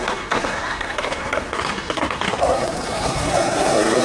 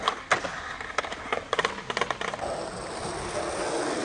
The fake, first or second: first